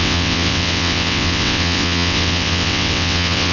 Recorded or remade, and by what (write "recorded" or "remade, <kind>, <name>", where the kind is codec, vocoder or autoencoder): remade, vocoder, WaveNeXt